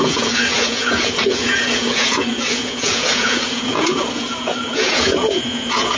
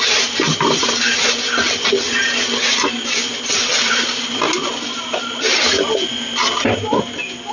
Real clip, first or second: second